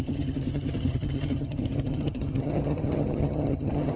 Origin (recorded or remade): remade